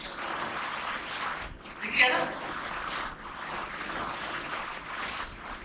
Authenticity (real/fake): real